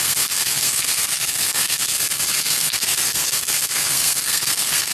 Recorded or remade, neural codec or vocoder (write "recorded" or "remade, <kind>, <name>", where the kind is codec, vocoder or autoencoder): remade, codec, SNAC